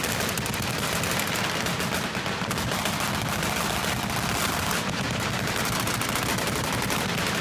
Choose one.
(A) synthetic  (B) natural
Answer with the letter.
B